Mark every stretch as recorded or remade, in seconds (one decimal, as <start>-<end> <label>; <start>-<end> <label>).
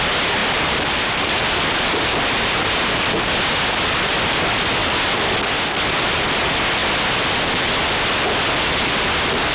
0.0-0.4 recorded; 0.4-2.1 remade; 2.1-4.8 recorded; 4.8-5.5 remade; 5.5-9.5 recorded